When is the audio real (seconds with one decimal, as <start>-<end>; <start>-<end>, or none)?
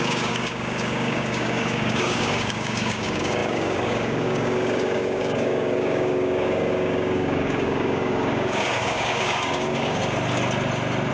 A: 10.0-11.1